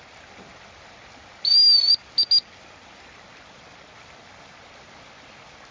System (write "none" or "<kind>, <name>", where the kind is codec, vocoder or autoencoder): none